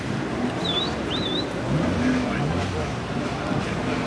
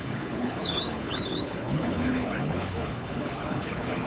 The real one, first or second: first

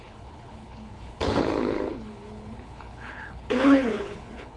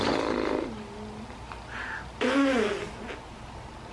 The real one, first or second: second